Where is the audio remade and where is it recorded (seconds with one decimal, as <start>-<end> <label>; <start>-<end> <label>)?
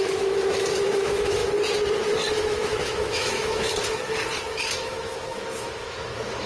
0.0-1.4 remade; 1.4-2.4 recorded; 2.4-3.7 remade; 3.7-4.7 recorded; 4.7-6.5 remade